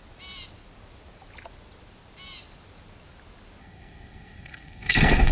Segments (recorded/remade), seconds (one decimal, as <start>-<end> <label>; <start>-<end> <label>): 0.0-3.6 recorded; 3.6-5.3 remade